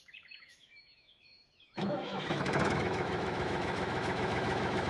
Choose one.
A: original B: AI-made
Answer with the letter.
B